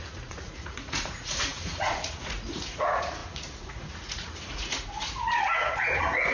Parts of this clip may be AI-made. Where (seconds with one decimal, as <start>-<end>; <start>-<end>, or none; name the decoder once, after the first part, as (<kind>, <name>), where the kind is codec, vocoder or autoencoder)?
0.0-6.3 (vocoder, Vocos)